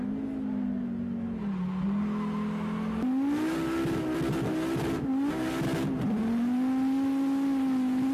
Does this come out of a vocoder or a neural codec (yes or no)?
no